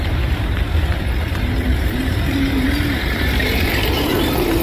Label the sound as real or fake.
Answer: fake